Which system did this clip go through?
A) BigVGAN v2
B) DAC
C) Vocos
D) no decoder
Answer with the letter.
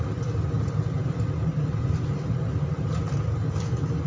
D